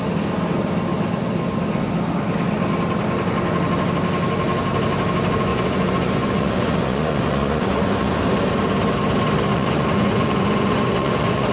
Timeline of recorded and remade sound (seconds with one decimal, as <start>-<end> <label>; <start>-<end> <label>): 0.0-5.5 recorded; 5.5-8.2 remade; 8.2-9.5 recorded; 9.5-11.5 remade